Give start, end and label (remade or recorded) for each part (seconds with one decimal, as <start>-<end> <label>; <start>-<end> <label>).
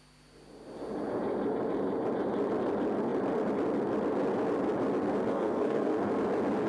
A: 0.0-5.3 recorded; 5.3-6.1 remade; 6.1-6.7 recorded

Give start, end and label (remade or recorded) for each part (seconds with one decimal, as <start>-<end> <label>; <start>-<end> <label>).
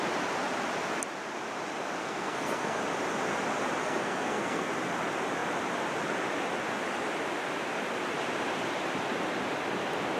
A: 0.0-2.0 recorded; 2.0-2.8 remade; 2.8-3.8 recorded; 3.8-4.7 remade; 4.7-10.2 recorded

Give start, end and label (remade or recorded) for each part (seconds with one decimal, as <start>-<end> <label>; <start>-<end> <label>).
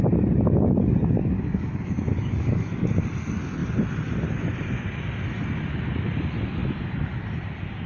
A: 0.0-1.2 recorded; 1.2-2.9 remade; 2.9-7.9 recorded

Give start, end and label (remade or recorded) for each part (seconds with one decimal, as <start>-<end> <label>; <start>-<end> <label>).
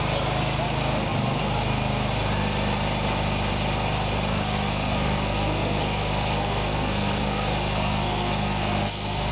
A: 0.0-4.3 recorded; 4.3-9.3 remade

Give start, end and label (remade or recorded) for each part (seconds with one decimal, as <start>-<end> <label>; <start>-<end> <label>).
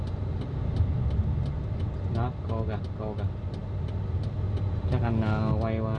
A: 0.0-6.0 recorded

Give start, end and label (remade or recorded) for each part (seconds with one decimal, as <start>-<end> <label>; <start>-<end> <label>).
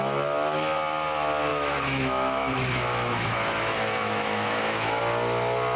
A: 0.0-1.5 recorded; 1.5-5.0 remade; 5.0-5.8 recorded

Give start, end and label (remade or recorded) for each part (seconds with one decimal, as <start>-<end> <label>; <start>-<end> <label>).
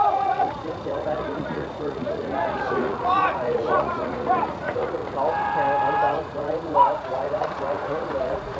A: 0.0-5.0 remade; 5.0-6.1 recorded; 6.1-8.6 remade